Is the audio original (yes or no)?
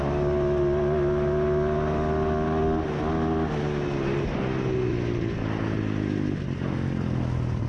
yes